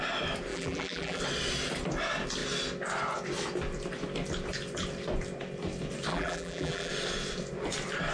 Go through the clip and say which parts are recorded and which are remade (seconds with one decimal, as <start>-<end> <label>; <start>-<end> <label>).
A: 0.0-0.5 recorded; 0.5-1.2 remade; 1.2-6.1 recorded; 6.1-6.9 remade; 6.9-8.1 recorded